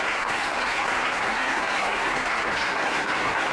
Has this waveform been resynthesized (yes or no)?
yes